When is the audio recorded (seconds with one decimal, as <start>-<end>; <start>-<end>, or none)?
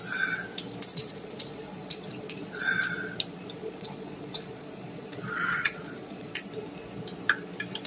0.0-0.9; 2.7-3.6; 6.3-7.9